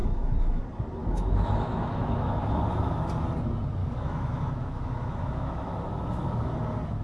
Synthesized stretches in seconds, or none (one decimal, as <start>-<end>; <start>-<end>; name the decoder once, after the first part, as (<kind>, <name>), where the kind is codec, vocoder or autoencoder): 0.0-0.6 (autoencoder, DAC-VAE); 1.0-3.1; 3.8-6.5